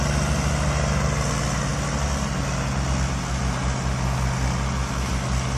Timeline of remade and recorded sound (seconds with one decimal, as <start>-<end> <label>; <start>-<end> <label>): 0.0-5.6 recorded